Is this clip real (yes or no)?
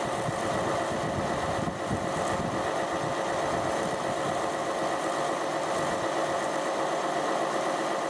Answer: yes